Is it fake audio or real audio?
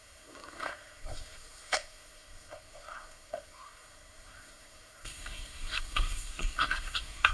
fake